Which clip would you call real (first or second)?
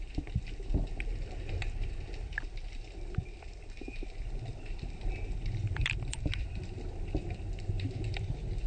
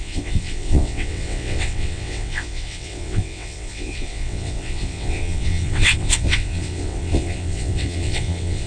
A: first